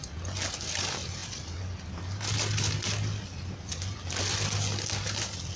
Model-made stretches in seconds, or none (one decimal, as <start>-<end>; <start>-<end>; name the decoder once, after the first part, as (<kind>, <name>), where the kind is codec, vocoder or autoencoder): none